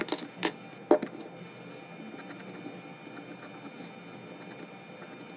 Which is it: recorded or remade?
recorded